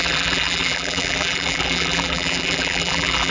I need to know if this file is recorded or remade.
remade